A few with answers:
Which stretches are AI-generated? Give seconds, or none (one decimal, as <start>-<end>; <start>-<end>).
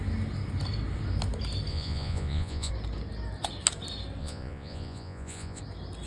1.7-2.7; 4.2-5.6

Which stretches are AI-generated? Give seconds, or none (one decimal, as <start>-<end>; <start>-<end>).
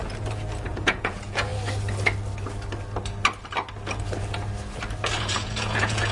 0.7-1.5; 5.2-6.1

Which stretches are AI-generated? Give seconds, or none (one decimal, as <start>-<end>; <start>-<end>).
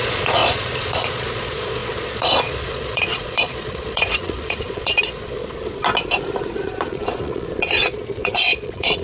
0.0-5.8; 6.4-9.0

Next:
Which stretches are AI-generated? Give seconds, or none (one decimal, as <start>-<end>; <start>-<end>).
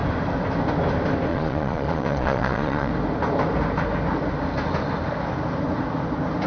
1.3-2.9